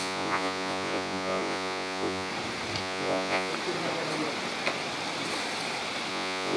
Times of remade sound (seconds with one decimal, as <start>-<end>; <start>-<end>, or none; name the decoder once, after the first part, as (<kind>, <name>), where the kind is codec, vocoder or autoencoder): 0.0-2.3 (vocoder, Vocos); 2.8-3.5; 6.1-6.6